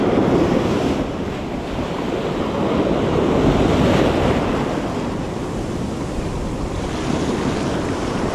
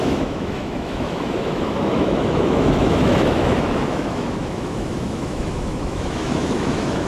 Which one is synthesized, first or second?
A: second